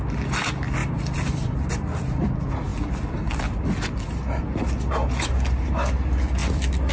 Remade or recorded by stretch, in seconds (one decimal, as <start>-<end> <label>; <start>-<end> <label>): 0.0-0.8 recorded; 0.8-2.0 remade; 2.0-6.4 recorded; 6.4-6.9 remade